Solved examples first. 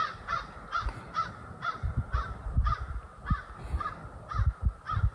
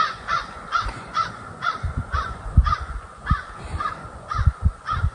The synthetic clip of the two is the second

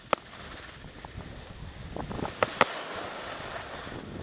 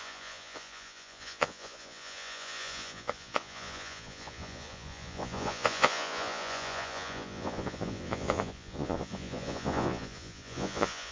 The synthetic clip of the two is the second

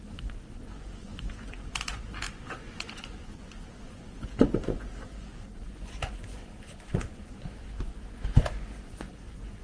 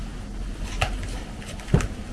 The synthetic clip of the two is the first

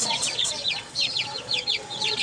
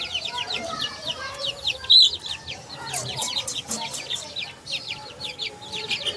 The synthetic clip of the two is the first